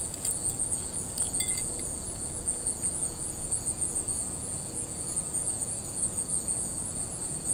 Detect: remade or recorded remade